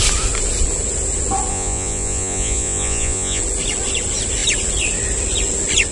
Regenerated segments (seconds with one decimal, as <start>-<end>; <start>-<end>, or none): 1.5-3.4